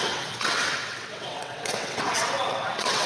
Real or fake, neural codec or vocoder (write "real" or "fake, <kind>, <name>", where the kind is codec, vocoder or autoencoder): fake, vocoder, WaveNeXt